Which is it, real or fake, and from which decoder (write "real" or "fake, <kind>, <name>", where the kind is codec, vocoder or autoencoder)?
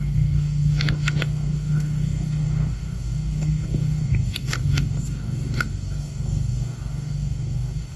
fake, codec, DAC